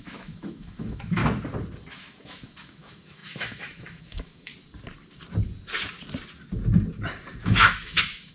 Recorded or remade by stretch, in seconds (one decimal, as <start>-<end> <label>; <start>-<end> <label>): 0.0-1.2 remade; 1.2-1.9 recorded; 1.9-4.5 remade; 4.5-7.4 recorded; 7.4-8.3 remade